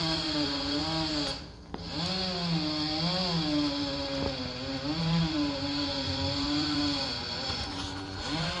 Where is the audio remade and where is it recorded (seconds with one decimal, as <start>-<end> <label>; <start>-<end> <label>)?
0.0-0.8 remade; 0.8-5.0 recorded; 5.0-8.6 remade